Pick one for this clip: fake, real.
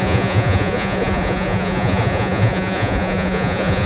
fake